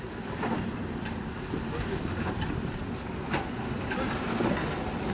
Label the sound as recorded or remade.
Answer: recorded